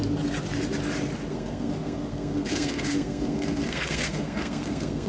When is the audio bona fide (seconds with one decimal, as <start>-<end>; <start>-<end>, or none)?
0.0-1.3